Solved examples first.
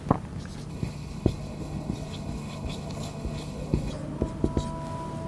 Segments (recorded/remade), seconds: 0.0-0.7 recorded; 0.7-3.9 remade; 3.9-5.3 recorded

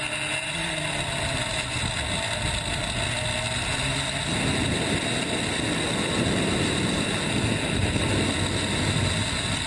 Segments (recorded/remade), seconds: 0.0-9.7 recorded

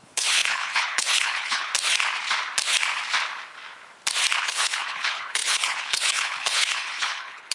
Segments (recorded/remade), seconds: 0.0-1.7 remade; 1.7-4.4 recorded; 4.4-7.5 remade

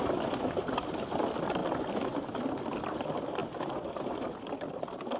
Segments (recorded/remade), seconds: 0.0-5.2 recorded

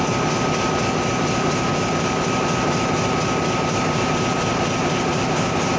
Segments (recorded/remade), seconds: 0.0-5.8 recorded

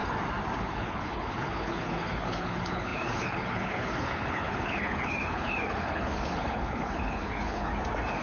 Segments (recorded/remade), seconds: 0.0-0.6 recorded; 0.6-7.7 remade; 7.7-8.2 recorded